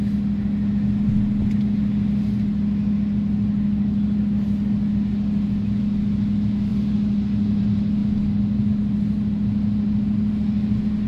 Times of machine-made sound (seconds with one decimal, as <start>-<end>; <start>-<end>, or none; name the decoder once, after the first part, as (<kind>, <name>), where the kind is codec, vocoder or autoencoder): none